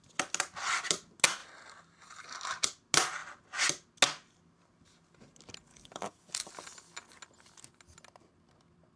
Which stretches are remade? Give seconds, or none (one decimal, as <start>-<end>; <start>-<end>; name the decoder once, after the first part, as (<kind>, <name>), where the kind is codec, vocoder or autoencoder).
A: 5.7-6.3 (codec, DAC)